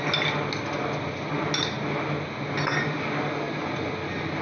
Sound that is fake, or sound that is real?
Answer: real